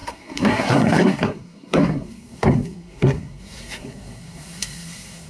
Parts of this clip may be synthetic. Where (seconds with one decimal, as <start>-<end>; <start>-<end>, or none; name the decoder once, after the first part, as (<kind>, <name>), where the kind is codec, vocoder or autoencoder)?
0.0-5.3 (codec, SNAC)